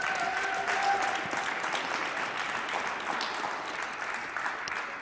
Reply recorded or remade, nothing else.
recorded